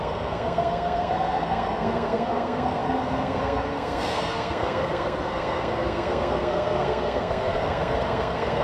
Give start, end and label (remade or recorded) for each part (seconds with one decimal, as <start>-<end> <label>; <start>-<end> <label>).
0.0-8.6 remade

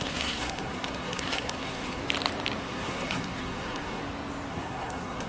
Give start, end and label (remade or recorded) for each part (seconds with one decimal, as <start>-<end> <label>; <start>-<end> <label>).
0.0-2.0 remade; 2.0-2.6 recorded; 2.6-4.0 remade; 4.0-4.5 recorded; 4.5-5.3 remade

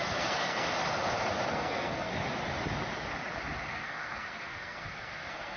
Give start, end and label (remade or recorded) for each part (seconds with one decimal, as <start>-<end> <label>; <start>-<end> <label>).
0.0-0.7 remade; 0.7-1.5 recorded; 1.5-2.1 remade; 2.1-3.7 recorded; 3.7-5.6 remade

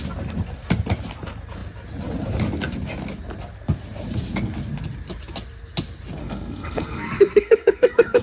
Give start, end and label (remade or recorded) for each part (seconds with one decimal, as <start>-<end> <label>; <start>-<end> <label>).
0.0-6.2 recorded; 6.2-8.2 remade

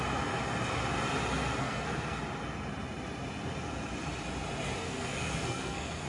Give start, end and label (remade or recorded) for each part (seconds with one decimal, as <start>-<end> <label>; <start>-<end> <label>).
0.0-1.6 recorded; 1.6-2.2 remade; 2.2-4.8 recorded; 4.8-6.1 remade

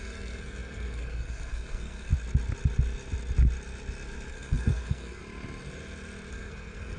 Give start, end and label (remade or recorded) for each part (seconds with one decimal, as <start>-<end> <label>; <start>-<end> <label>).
0.0-2.1 remade; 2.1-4.3 recorded; 4.3-5.2 remade; 5.2-6.3 recorded; 6.3-7.0 remade